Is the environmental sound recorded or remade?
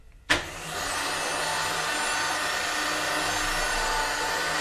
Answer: recorded